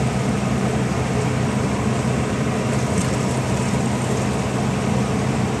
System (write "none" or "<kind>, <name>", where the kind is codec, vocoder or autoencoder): none